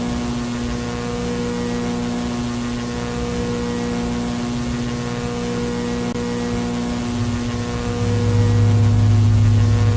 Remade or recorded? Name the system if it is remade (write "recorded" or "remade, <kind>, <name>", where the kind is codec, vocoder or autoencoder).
recorded